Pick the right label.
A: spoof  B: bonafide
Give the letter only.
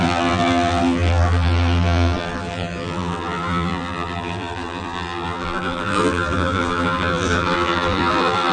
A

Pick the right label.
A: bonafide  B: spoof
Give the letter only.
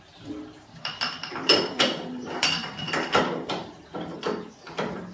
B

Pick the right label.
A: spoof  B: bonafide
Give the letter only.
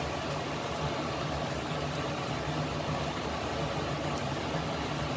B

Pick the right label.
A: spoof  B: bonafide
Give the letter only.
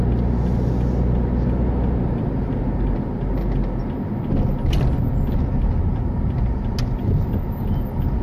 B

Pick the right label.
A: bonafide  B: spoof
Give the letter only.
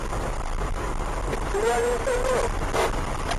A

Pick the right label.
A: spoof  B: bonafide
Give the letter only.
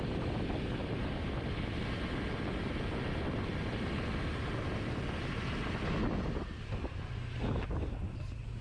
B